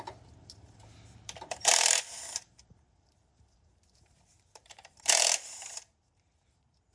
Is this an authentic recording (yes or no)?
no